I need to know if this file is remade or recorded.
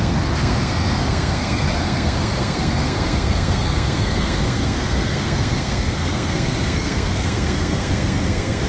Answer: remade